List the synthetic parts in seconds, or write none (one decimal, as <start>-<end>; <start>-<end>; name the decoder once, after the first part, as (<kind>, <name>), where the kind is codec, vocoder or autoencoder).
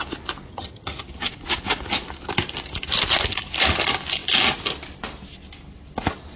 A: 0.5-1.0 (vocoder, HiFi-GAN)